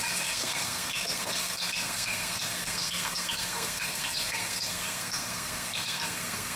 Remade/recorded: remade